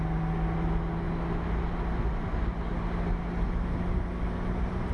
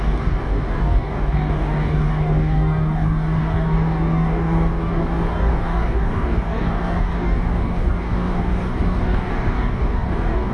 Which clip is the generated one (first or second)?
second